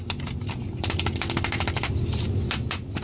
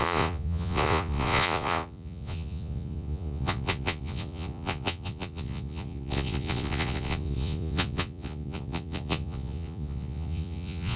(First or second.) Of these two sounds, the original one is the first